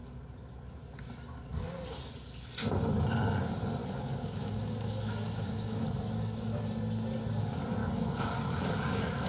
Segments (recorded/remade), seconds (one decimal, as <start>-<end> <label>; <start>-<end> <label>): 0.0-3.8 recorded; 3.8-6.7 remade; 6.7-7.8 recorded; 7.8-9.3 remade